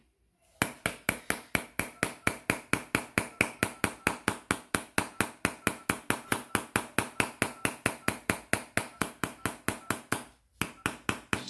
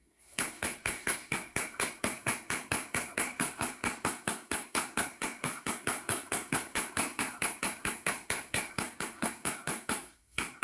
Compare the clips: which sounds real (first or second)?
first